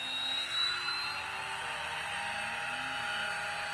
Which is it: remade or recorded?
recorded